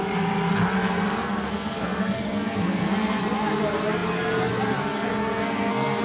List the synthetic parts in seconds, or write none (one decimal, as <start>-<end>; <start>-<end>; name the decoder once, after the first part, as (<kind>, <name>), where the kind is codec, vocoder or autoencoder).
1.2-3.2 (codec, SNAC); 5.2-6.0